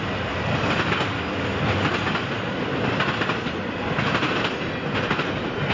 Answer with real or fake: real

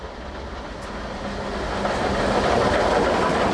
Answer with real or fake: real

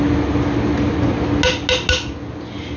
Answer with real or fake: real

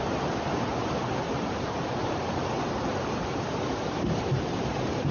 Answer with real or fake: fake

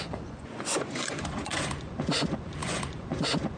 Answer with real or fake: fake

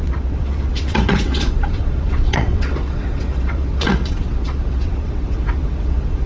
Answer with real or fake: fake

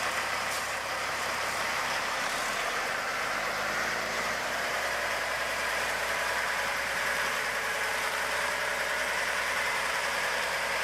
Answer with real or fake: fake